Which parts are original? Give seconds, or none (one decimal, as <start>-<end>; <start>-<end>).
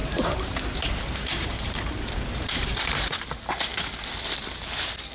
2.8-5.1